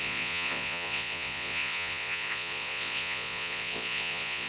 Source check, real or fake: fake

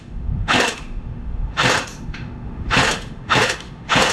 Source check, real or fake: fake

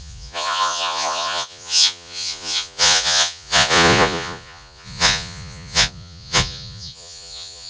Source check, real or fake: fake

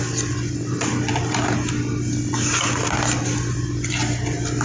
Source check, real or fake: real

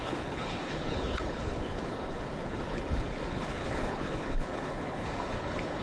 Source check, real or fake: fake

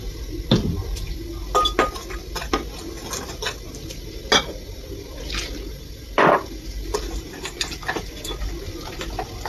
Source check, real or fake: real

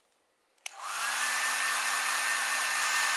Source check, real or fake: fake